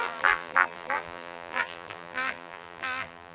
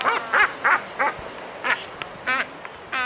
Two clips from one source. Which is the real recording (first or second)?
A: second